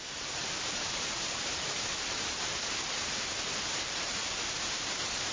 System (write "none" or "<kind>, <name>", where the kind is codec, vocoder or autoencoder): vocoder, BigVGAN v2